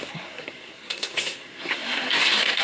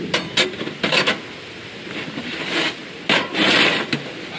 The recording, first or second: second